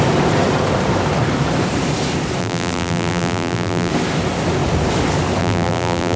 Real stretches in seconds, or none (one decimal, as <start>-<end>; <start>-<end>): 0.0-2.4; 3.9-5.4